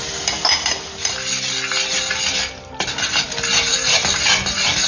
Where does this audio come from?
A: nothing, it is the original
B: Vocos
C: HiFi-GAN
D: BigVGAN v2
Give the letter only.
A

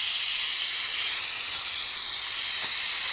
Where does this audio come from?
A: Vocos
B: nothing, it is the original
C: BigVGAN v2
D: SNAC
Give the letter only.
B